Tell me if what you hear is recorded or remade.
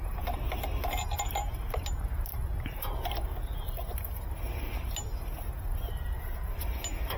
recorded